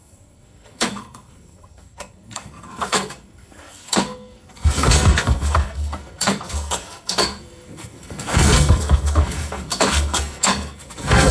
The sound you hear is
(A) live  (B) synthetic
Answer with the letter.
B